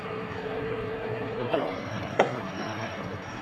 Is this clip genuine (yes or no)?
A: no